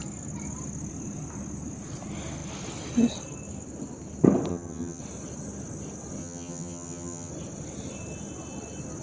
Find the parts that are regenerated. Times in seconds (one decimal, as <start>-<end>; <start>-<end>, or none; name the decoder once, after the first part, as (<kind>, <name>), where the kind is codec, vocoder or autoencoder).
4.5-5.0 (vocoder, HiFi-GAN); 6.2-7.3